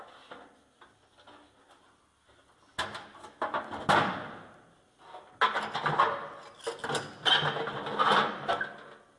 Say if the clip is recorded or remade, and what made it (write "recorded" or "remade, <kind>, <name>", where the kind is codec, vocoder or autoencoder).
recorded